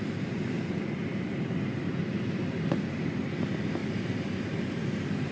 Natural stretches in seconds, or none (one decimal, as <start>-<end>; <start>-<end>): 0.0-5.3